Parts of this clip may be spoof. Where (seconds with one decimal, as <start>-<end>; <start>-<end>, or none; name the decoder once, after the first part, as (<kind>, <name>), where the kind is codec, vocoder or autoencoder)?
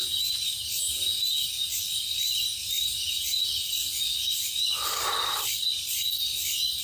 3.8-5.7 (vocoder, BigVGAN v2)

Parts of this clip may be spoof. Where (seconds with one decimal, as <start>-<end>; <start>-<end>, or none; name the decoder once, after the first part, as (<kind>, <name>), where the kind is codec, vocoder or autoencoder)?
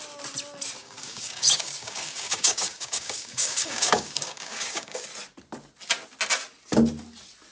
0.8-5.0 (codec, DAC)